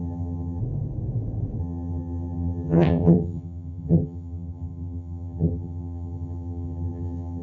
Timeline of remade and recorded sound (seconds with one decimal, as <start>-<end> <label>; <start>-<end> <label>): 0.0-0.6 remade; 0.6-1.6 recorded; 1.6-7.4 remade